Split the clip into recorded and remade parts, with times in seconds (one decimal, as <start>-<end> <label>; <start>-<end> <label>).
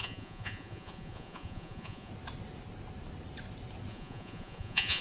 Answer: 0.0-2.1 remade; 2.1-3.9 recorded; 3.9-5.0 remade